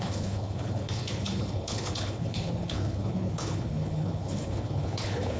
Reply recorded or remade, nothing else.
remade